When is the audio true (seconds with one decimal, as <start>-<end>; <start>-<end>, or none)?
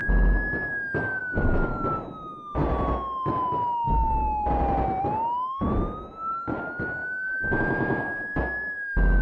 0.0-9.2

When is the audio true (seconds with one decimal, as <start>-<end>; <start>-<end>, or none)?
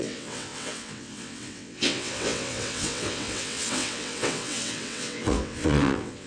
none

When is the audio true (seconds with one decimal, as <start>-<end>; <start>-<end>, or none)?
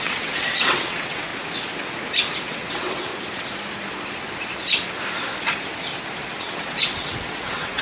1.3-2.4; 3.1-6.4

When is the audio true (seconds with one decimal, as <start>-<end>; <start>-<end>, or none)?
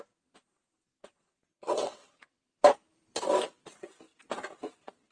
0.0-1.0; 2.3-5.1